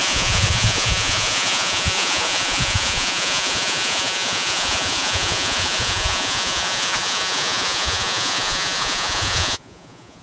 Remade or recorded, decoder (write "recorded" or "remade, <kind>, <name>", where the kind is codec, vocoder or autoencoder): remade, vocoder, Vocos